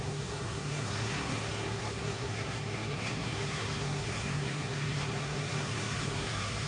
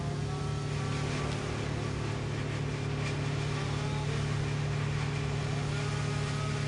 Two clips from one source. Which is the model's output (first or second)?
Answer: first